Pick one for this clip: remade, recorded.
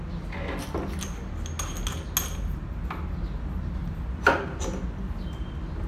recorded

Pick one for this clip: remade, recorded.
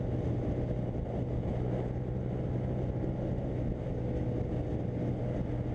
recorded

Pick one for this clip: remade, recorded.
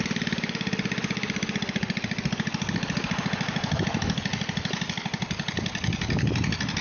recorded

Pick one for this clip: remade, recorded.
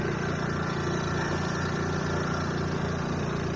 recorded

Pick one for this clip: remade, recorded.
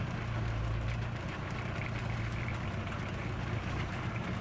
recorded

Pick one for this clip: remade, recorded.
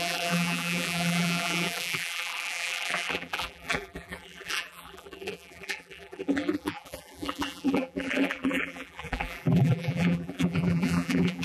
remade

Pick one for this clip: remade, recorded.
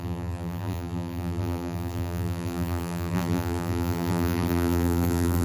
remade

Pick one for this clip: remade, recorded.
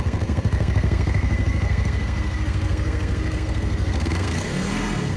remade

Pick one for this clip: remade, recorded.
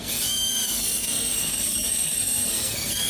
remade